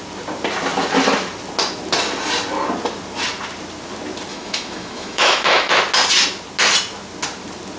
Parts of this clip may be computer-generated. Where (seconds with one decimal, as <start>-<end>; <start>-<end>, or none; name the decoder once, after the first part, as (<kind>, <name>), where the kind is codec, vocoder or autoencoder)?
4.3-5.7 (autoencoder, DAC-VAE)